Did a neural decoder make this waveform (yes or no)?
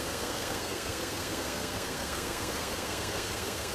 yes